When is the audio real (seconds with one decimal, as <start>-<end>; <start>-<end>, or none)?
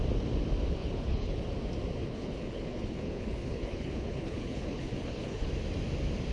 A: 0.0-0.8; 1.4-2.0; 5.5-6.3